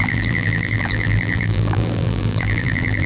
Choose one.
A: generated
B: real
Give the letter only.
A